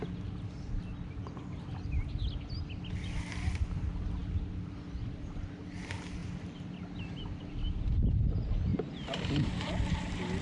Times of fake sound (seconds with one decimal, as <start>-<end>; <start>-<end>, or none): none